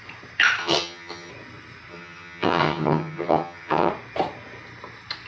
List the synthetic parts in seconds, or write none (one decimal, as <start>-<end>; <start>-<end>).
0.6-1.3; 1.9-3.9